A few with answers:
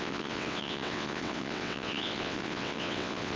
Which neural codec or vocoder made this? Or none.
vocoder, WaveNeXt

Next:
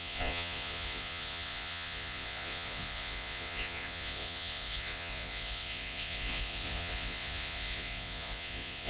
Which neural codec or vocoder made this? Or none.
vocoder, Vocos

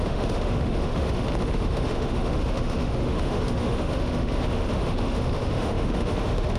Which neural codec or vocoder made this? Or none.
autoencoder, DAC-VAE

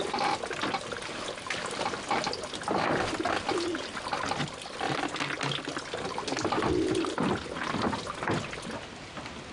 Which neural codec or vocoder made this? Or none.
none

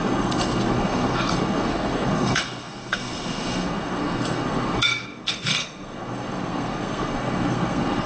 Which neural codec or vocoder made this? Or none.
codec, SNAC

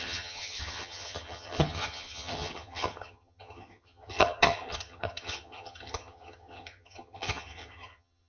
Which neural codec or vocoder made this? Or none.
vocoder, HiFi-GAN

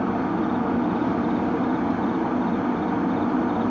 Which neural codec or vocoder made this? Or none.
none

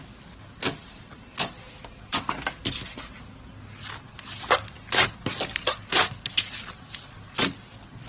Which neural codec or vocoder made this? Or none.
none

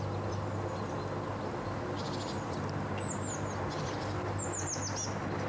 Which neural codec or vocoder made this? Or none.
none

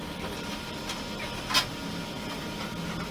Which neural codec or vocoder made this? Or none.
none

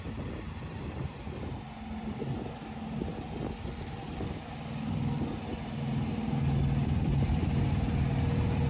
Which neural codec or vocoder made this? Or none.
none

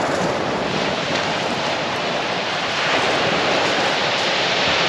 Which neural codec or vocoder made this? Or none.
vocoder, BigVGAN v2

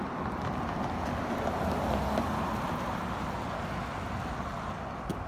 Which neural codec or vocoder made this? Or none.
none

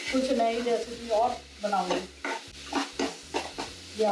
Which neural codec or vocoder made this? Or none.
none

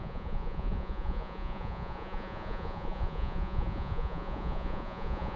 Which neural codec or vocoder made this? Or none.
vocoder, Vocos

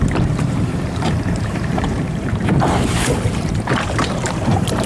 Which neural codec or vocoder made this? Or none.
vocoder, BigVGAN v2